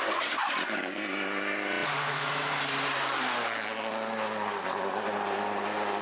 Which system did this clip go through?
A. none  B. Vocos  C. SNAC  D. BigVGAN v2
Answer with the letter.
A